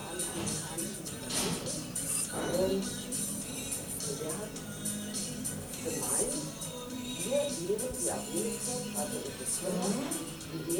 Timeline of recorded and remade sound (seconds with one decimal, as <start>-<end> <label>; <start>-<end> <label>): 0.0-4.3 remade; 4.3-5.2 recorded; 5.2-8.0 remade; 8.0-10.8 recorded